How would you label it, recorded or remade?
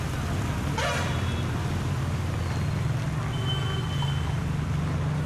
recorded